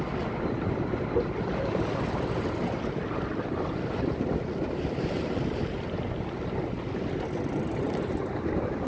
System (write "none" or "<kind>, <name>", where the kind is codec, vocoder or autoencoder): none